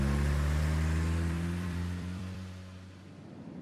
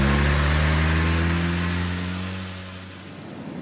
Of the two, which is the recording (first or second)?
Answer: second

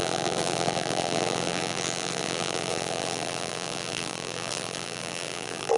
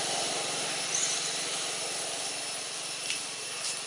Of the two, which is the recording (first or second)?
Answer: second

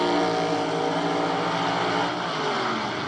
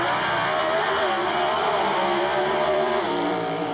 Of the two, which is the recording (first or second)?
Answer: first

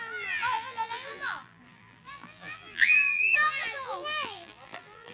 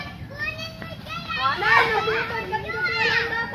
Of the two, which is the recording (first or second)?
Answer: second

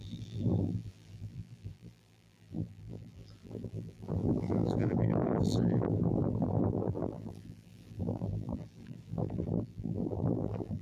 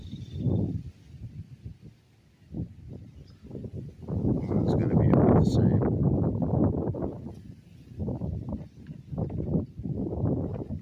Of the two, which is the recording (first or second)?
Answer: second